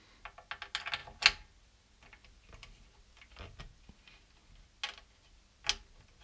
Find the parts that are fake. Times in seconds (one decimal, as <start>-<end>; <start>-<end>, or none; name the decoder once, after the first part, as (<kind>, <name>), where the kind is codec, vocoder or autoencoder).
none